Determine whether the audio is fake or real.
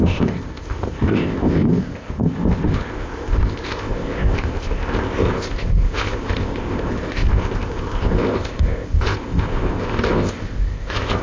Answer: fake